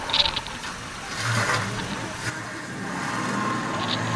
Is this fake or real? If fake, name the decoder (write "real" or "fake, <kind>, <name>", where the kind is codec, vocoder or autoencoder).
real